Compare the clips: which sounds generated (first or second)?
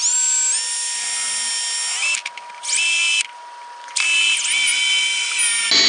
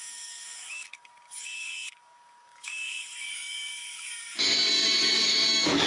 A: second